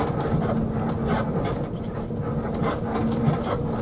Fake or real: real